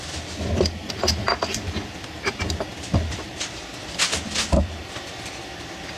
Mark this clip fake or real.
real